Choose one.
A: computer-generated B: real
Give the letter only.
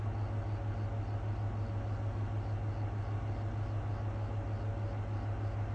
B